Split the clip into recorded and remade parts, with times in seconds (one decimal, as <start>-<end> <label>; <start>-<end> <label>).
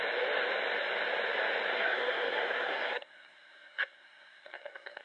0.0-1.7 recorded; 1.7-5.0 remade